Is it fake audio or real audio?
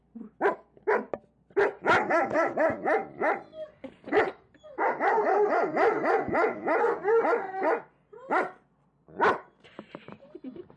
real